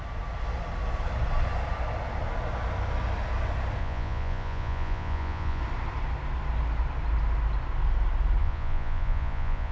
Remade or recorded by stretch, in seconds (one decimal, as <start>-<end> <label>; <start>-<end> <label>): 0.0-3.8 recorded; 3.8-5.6 remade; 5.6-8.4 recorded; 8.4-9.7 remade